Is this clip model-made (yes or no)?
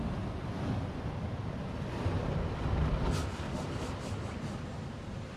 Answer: no